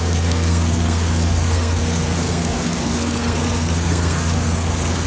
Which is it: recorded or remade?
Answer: remade